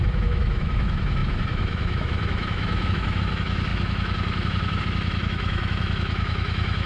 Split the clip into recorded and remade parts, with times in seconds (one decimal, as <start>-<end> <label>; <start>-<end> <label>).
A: 0.0-6.9 remade